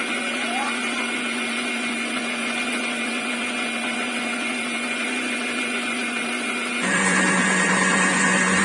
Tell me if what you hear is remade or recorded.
remade